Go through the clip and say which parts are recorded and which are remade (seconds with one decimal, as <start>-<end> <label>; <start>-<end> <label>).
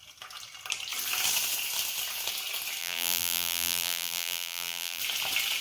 0.0-2.8 recorded; 2.8-5.0 remade; 5.0-5.6 recorded